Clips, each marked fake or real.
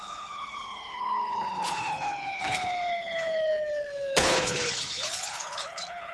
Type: fake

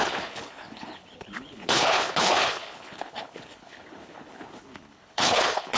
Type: fake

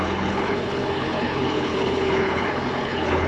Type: fake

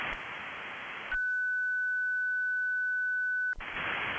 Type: real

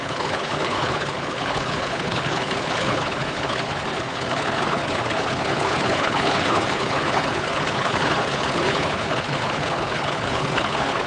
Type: fake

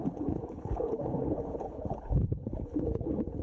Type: fake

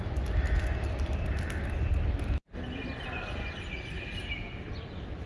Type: real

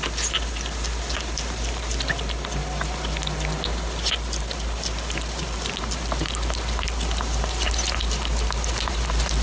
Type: real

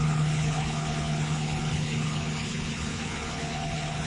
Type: fake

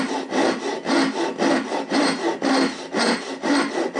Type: real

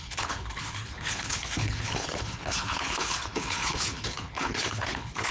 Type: fake